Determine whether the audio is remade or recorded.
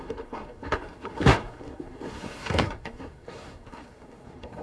remade